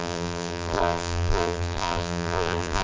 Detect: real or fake fake